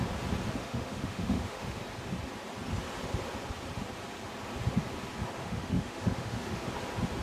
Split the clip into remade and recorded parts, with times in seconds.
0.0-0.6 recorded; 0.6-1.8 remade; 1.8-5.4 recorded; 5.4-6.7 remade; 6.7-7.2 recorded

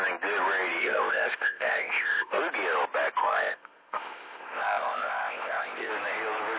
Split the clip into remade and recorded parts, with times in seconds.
0.0-0.8 recorded; 0.8-2.4 remade; 2.4-3.2 recorded; 3.2-5.9 remade; 5.9-6.6 recorded

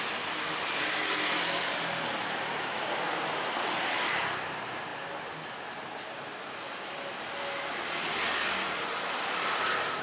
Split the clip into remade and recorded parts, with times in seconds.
0.0-2.2 recorded; 2.2-2.8 remade; 2.8-10.0 recorded

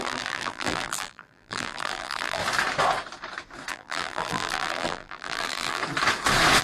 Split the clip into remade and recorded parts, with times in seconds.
0.0-2.4 remade; 2.4-3.7 recorded; 3.7-5.8 remade; 5.8-6.6 recorded

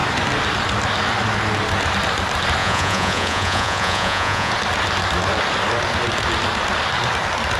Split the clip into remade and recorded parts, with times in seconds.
0.0-2.6 recorded; 2.6-4.5 remade; 4.5-7.6 recorded

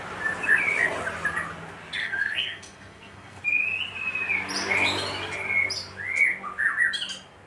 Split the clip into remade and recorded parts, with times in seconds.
0.0-2.0 recorded; 2.0-3.4 remade; 3.4-7.5 recorded

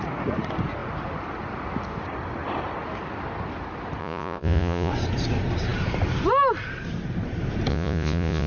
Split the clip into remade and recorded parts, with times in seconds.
0.0-4.0 recorded; 4.0-4.9 remade; 4.9-7.7 recorded; 7.7-8.5 remade

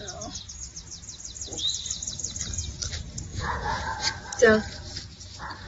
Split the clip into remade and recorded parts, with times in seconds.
0.0-3.3 recorded; 3.3-3.8 remade; 3.8-5.7 recorded